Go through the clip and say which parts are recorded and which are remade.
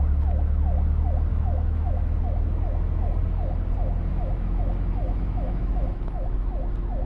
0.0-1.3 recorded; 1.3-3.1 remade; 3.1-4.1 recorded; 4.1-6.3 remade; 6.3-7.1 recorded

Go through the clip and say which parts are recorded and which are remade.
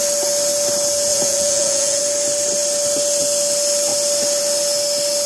0.0-1.1 recorded; 1.1-2.0 remade; 2.0-5.3 recorded